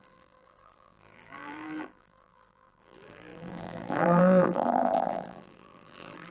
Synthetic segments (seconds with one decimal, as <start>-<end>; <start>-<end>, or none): 0.0-6.3